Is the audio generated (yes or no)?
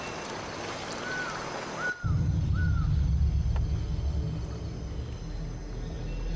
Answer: no